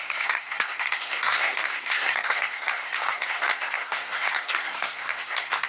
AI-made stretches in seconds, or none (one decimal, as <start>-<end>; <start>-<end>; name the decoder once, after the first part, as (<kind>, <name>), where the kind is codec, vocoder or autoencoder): 0.0-5.7 (codec, SNAC)